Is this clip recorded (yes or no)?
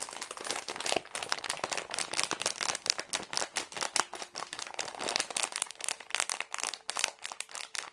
yes